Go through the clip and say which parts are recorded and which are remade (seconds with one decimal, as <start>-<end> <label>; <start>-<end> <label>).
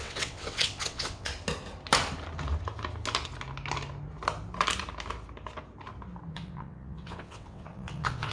0.0-1.3 remade; 1.3-6.3 recorded; 6.3-8.3 remade